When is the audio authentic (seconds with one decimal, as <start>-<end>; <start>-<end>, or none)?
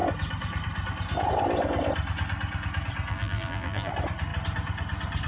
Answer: 0.0-3.1; 3.9-5.3